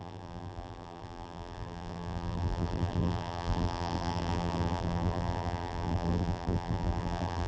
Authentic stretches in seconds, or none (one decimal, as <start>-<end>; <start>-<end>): none